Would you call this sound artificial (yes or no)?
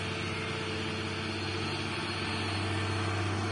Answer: no